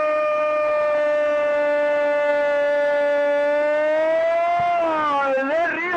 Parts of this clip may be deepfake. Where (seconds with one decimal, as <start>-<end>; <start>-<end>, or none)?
none